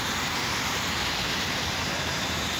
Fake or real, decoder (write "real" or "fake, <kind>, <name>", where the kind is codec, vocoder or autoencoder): fake, vocoder, BigVGAN v2